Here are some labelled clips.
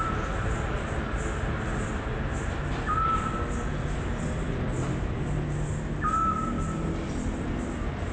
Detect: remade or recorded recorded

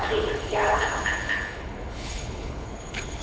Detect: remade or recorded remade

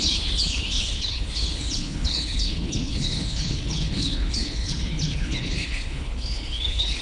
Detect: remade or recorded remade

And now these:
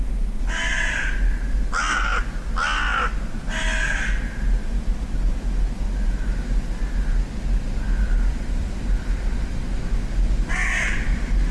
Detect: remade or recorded recorded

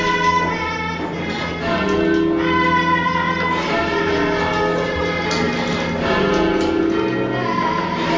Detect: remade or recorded recorded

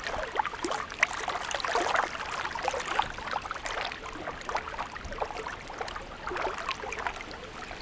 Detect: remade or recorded recorded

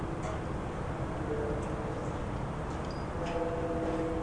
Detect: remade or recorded recorded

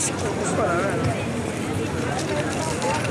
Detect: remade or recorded recorded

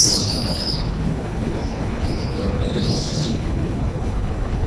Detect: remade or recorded remade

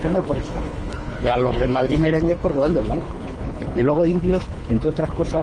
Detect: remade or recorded remade